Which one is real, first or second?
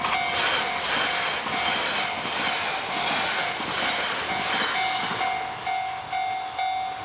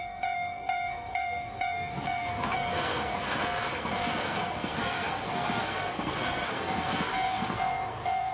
first